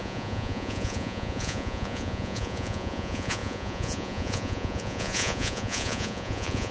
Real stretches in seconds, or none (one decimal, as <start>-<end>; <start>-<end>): none